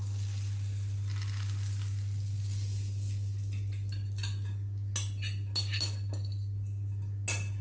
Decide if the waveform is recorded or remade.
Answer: recorded